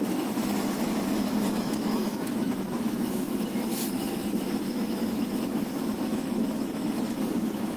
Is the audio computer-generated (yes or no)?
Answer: yes